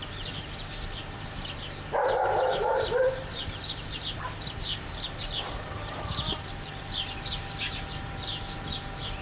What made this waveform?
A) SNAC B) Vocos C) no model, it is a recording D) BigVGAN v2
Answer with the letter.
D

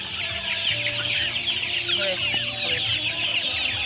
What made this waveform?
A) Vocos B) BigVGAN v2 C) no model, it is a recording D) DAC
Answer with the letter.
C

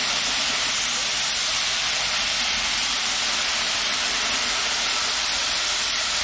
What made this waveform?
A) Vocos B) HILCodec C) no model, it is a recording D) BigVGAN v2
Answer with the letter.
D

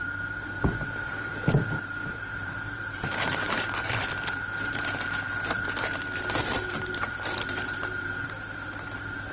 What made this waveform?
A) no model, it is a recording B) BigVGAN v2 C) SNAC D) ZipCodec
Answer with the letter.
B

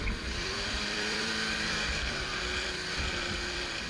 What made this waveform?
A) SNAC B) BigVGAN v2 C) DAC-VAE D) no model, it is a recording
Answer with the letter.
B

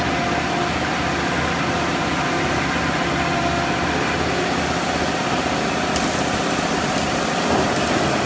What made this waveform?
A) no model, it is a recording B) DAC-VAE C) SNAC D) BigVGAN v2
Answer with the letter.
A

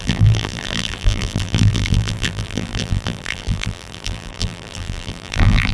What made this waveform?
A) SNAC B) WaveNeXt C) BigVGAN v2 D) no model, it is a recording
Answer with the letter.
C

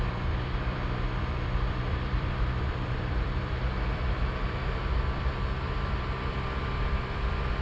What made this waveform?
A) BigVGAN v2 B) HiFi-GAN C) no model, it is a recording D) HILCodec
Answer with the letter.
A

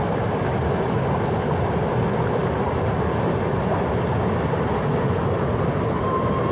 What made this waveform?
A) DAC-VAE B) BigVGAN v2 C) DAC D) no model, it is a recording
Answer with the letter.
D